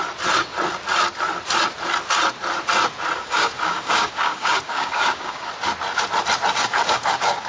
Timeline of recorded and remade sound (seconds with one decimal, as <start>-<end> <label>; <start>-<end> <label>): 0.0-3.2 recorded; 3.2-5.5 remade; 5.5-6.6 recorded; 6.6-7.5 remade

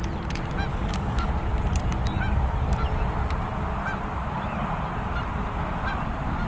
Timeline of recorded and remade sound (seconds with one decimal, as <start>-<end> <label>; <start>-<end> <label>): 0.0-0.7 recorded; 0.7-1.3 remade; 1.3-6.5 recorded

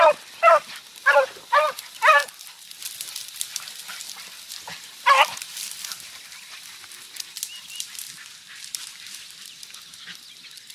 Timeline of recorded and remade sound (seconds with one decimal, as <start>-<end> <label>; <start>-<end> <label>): 0.0-10.7 recorded

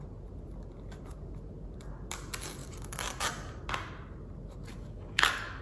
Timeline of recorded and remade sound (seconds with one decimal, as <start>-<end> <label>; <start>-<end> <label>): 0.0-4.7 recorded; 4.7-5.6 remade